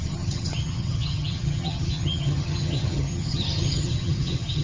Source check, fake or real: fake